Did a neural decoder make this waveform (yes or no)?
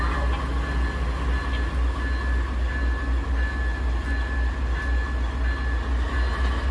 no